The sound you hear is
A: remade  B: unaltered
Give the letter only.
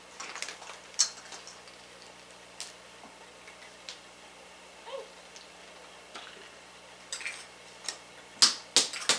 B